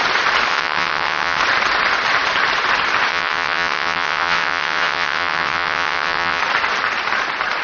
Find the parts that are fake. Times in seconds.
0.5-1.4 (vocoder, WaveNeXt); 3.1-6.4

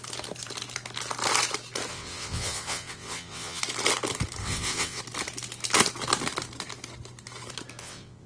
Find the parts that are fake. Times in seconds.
1.9-3.6 (vocoder, WaveNeXt); 4.4-5.0; 7.8-8.3

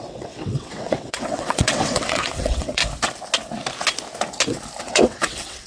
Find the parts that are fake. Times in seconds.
0.0-2.8 (vocoder, WaveNeXt); 4.8-5.7

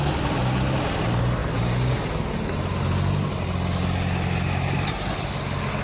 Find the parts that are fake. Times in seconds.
none

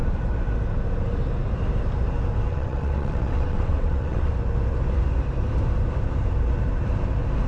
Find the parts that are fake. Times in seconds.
2.5-4.3 (vocoder, WaveNeXt)

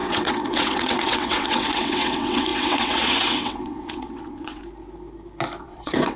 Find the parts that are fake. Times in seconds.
0.0-4.6 (vocoder, WaveNeXt); 5.6-6.2

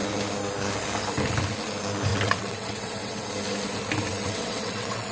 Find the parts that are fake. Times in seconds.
2.1-3.3 (vocoder, WaveNeXt); 4.1-5.1

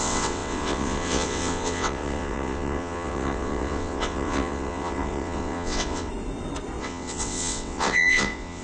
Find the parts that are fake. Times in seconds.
0.0-6.1 (vocoder, WaveNeXt); 6.8-8.6